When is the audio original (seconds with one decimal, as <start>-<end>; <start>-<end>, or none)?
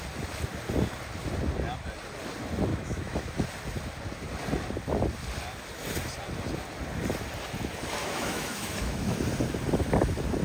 0.0-2.7; 3.3-8.0; 9.2-10.4